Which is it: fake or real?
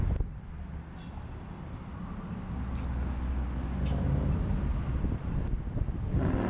real